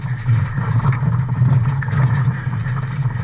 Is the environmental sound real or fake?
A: real